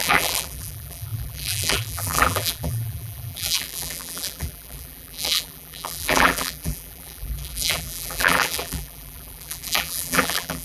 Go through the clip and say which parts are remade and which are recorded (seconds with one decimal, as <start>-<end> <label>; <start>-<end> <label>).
0.0-10.6 remade